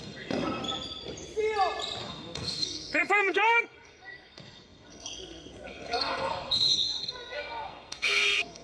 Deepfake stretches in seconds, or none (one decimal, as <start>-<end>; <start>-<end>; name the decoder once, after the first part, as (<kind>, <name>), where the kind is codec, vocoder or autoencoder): 0.0-0.6 (codec, SNAC); 2.0-8.6